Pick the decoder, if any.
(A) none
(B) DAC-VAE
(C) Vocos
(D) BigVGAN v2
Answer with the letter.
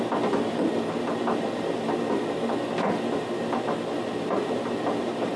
A